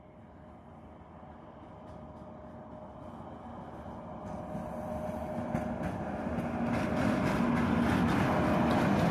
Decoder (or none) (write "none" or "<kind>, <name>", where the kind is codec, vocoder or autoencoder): none